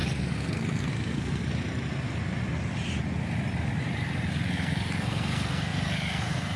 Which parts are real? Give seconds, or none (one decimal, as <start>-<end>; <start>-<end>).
1.4-4.3